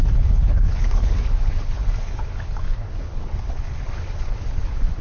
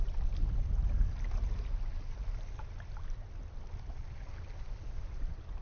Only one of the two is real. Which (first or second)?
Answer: second